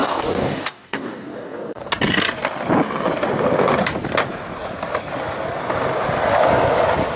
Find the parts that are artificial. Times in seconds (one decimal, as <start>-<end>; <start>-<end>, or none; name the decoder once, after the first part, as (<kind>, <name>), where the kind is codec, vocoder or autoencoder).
0.0-1.8 (codec, DAC)